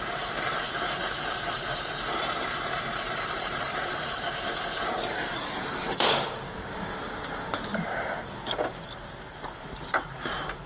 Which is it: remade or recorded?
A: remade